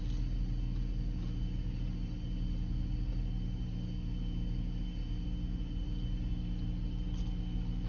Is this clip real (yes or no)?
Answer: yes